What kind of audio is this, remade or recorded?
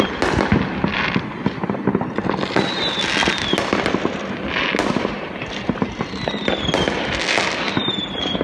recorded